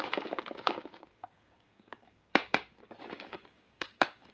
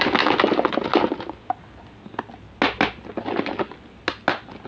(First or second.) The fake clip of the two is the first